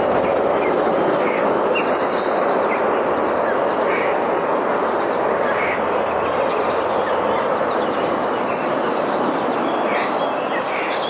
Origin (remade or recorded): recorded